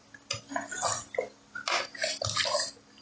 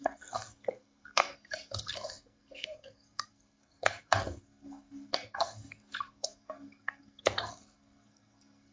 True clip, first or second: first